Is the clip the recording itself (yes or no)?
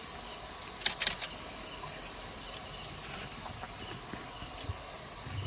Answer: yes